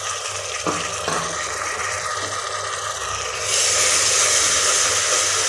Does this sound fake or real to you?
real